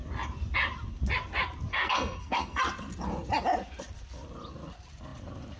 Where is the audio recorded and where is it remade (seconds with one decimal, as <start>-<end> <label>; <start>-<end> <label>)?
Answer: 0.0-1.7 recorded; 1.7-2.6 remade; 2.6-5.6 recorded